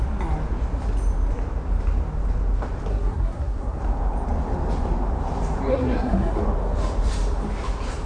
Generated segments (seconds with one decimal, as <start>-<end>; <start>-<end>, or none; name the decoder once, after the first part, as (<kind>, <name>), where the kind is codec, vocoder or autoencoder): 2.9-3.8 (codec, SNAC); 5.7-6.4